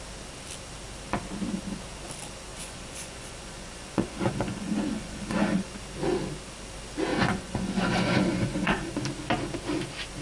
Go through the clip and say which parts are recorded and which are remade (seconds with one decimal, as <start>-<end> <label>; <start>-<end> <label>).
0.0-2.5 recorded; 2.5-5.7 remade; 5.7-7.1 recorded; 7.1-8.9 remade; 8.9-10.2 recorded